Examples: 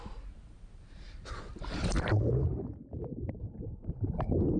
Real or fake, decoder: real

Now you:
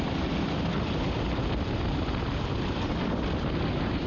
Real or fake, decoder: real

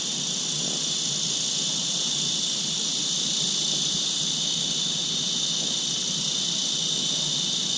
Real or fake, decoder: real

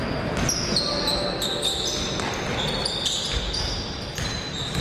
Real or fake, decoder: real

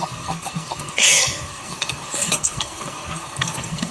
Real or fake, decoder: fake, codec, SNAC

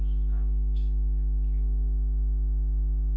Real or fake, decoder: real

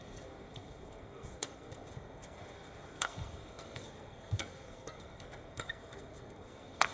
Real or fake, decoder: fake, codec, SNAC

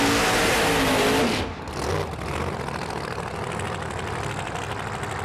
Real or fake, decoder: real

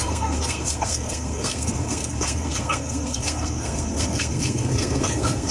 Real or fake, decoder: fake, codec, SNAC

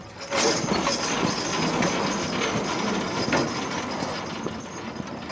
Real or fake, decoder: real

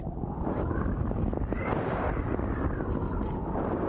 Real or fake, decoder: real